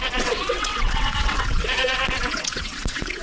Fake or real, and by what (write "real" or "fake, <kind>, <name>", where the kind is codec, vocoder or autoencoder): fake, vocoder, WaveNeXt